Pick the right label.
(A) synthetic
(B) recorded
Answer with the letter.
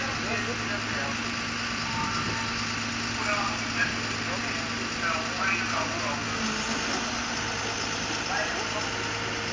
B